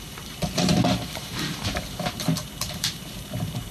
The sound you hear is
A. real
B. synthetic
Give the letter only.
B